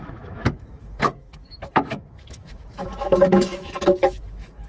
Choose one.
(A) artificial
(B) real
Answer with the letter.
A